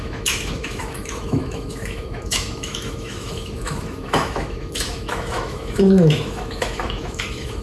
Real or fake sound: fake